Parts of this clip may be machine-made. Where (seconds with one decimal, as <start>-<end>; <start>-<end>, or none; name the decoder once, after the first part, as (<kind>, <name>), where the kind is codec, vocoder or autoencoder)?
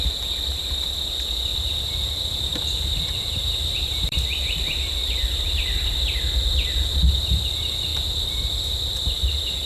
1.5-6.2 (vocoder, BigVGAN v2); 7.9-8.4; 8.9-9.7